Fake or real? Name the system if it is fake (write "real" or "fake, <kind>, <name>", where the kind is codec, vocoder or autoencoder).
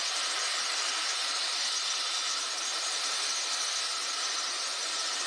real